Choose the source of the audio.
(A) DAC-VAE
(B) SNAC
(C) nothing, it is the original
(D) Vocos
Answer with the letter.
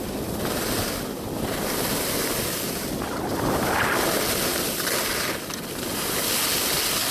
C